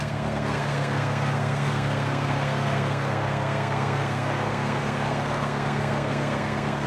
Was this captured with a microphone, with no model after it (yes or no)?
no